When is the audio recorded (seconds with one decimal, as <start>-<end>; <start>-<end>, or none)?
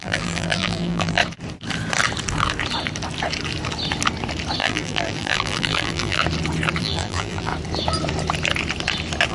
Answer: 1.2-4.6; 6.2-6.8; 7.5-9.3